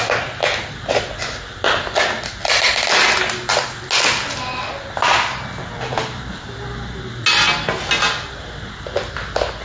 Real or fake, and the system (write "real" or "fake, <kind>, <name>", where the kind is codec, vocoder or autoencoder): real